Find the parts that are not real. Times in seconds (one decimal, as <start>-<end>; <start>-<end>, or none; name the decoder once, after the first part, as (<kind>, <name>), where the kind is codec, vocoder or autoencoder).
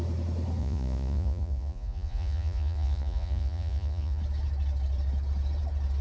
0.6-4.2 (vocoder, Vocos)